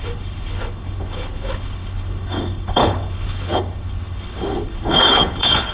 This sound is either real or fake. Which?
fake